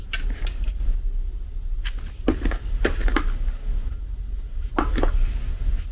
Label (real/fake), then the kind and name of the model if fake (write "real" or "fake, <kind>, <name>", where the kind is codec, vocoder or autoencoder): real